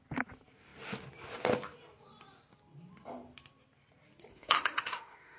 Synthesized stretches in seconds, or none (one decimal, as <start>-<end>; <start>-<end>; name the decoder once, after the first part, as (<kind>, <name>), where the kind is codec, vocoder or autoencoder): 4.3-5.4 (autoencoder, DAC-VAE)